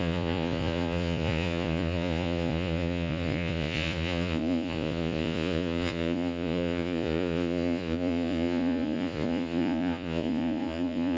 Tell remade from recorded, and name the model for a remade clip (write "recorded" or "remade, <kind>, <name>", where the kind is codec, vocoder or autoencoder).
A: remade, vocoder, Vocos